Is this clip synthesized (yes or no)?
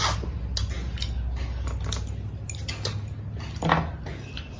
no